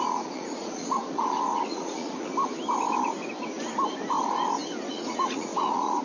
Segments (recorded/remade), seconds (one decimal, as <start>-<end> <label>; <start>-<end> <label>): 0.0-2.3 remade; 2.3-4.9 recorded; 4.9-6.0 remade

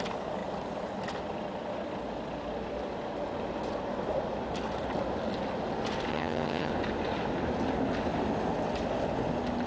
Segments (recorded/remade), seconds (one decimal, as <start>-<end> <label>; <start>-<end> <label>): 0.0-6.1 recorded; 6.1-6.7 remade; 6.7-9.7 recorded

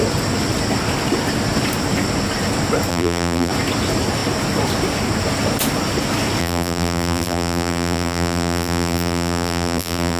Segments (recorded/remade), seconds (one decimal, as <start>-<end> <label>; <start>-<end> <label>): 0.0-2.9 recorded; 2.9-3.5 remade; 3.5-6.4 recorded; 6.4-10.2 remade